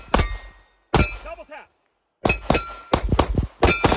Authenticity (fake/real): real